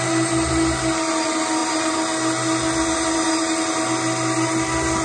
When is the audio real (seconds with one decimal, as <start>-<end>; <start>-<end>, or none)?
0.0-5.0